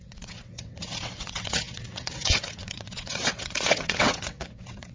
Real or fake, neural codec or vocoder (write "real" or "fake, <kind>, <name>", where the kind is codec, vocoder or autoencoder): fake, vocoder, WaveNeXt